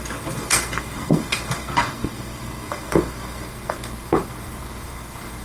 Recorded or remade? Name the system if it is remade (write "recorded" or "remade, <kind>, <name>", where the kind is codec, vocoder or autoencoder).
remade, codec, SNAC